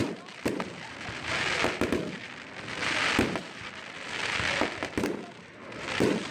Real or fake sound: real